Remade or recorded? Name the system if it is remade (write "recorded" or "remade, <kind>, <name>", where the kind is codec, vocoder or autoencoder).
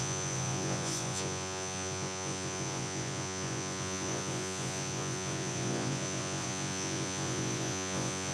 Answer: remade, vocoder, Vocos